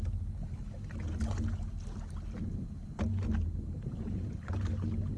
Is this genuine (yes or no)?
yes